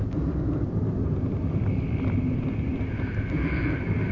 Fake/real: real